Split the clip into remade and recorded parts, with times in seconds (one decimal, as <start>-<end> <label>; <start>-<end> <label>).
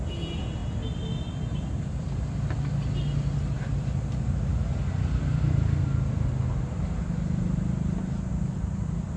0.0-9.2 recorded